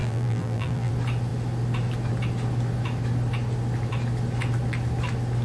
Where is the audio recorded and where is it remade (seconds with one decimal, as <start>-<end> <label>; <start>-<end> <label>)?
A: 0.0-0.9 remade; 0.9-5.4 recorded